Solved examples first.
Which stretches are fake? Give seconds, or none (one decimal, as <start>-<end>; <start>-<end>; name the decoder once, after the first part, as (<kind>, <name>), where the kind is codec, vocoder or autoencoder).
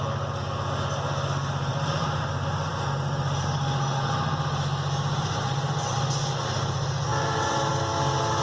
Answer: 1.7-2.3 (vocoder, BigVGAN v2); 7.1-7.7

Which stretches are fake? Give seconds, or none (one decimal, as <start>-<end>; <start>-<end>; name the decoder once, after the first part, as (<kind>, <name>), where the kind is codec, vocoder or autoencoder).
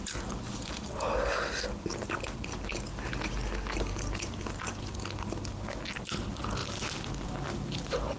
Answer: 0.0-0.9 (vocoder, BigVGAN v2); 6.6-7.1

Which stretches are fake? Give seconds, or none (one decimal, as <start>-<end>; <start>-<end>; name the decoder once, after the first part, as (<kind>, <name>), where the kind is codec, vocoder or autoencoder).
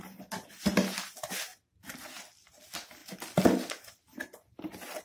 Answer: none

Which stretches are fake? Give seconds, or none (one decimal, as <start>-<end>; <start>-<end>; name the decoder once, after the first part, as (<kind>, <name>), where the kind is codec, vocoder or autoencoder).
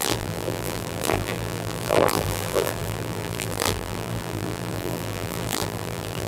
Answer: 0.0-6.3 (vocoder, BigVGAN v2)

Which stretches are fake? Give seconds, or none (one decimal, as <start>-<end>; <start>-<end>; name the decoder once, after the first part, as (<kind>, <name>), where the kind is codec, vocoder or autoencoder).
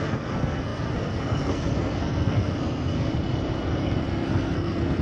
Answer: 0.0-3.1 (codec, SNAC); 3.6-5.0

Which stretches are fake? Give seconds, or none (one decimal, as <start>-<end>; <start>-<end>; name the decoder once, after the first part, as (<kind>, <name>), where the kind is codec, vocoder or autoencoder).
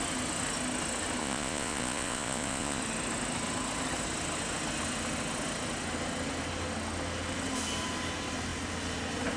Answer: 1.2-2.8 (vocoder, Vocos)